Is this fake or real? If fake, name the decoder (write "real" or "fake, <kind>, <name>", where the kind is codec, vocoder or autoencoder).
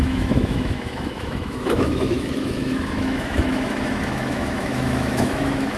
fake, autoencoder, DAC-VAE